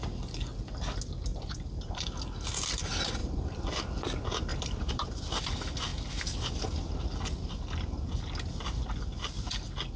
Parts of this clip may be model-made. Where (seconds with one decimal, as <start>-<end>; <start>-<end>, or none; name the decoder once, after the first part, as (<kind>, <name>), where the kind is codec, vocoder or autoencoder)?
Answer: 1.3-2.0 (vocoder, BigVGAN v2); 3.2-3.7; 4.5-5.4